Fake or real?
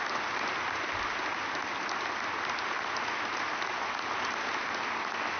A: real